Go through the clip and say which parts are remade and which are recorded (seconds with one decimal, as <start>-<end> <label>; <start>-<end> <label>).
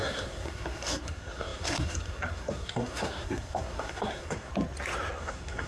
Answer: 0.0-4.5 remade; 4.5-5.2 recorded; 5.2-5.7 remade